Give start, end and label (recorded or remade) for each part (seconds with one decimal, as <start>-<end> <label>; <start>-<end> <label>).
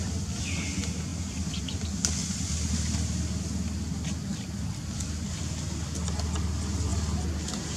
0.0-7.8 recorded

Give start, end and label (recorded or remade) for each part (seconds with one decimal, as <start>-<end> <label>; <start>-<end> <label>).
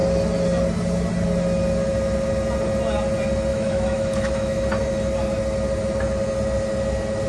0.0-3.5 recorded; 3.5-4.6 remade; 4.6-7.3 recorded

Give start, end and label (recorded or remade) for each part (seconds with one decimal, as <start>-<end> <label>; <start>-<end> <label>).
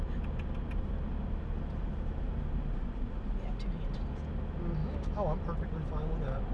0.0-4.8 recorded; 4.8-5.4 remade; 5.4-6.5 recorded